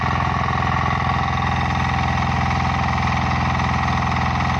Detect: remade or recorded recorded